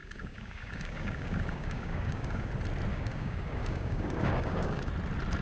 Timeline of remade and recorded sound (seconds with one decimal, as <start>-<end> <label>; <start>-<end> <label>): 0.0-2.5 remade; 2.5-2.9 recorded; 2.9-4.9 remade; 4.9-5.4 recorded